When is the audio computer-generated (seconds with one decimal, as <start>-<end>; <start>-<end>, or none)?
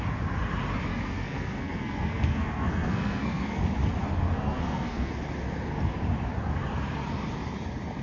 0.9-3.6; 4.0-5.1